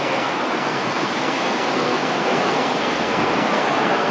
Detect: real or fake fake